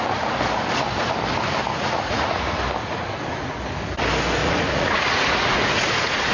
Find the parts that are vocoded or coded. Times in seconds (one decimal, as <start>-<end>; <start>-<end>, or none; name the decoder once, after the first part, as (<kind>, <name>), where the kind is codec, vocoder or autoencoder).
1.6-2.4 (vocoder, Vocos); 2.8-3.6; 4.4-6.3